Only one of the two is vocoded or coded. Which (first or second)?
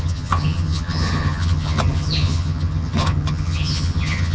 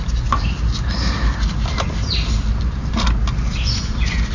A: first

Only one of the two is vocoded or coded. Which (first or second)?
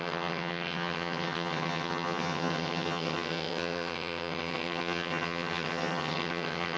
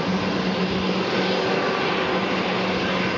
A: first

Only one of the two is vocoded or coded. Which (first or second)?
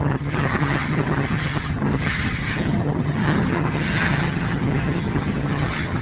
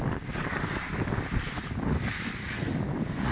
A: first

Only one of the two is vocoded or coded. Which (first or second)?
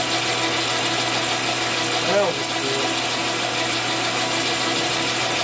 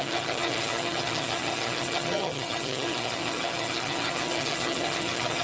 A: second